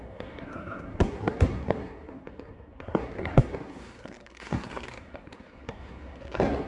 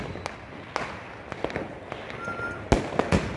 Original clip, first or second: second